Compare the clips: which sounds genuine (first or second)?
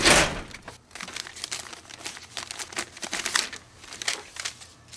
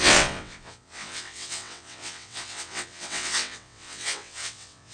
first